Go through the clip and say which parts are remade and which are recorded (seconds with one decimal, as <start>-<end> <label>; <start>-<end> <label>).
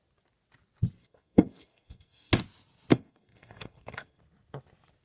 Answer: 0.0-1.0 recorded; 1.0-2.3 remade; 2.3-2.9 recorded; 2.9-4.2 remade; 4.2-5.0 recorded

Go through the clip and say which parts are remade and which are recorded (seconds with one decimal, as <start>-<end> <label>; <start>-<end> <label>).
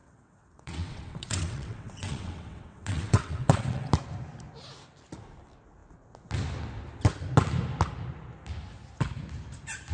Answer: 0.0-3.9 remade; 3.9-9.9 recorded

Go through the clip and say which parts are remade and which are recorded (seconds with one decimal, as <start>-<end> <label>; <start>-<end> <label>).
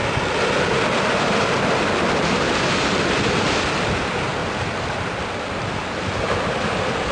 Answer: 0.0-1.1 remade; 1.1-4.4 recorded; 4.4-6.0 remade; 6.0-7.1 recorded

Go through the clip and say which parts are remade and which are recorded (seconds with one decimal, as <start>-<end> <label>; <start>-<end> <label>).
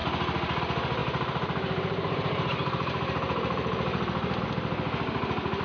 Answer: 0.0-1.0 recorded; 1.0-4.4 remade; 4.4-5.6 recorded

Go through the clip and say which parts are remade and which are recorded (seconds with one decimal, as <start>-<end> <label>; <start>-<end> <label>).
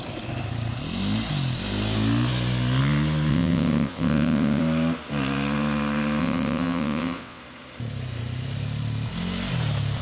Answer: 0.0-3.3 recorded; 3.3-4.6 remade; 4.6-6.2 recorded; 6.2-7.4 remade; 7.4-10.0 recorded